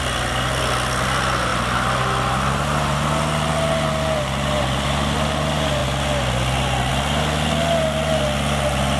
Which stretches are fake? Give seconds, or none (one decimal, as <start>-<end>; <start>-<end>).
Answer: none